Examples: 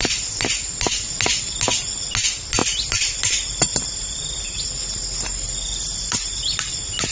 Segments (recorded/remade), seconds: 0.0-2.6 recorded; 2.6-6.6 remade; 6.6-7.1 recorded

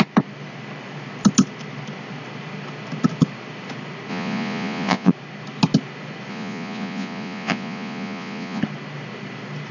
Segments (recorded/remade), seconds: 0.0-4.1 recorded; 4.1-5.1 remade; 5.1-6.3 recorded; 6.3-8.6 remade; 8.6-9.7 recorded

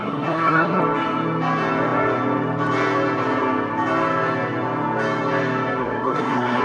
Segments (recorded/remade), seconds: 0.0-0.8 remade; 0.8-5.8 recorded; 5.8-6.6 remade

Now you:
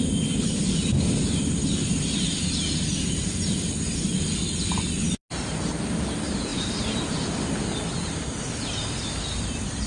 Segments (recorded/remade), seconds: 0.0-9.9 recorded